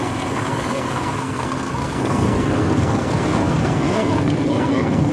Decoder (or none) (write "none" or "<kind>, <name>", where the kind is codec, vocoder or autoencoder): codec, SNAC